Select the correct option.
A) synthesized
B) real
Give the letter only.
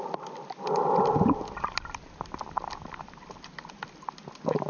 B